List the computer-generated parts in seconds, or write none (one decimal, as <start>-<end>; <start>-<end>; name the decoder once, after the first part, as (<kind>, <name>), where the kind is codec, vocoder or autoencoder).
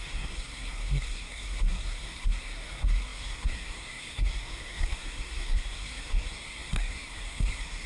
0.0-7.9 (codec, SNAC)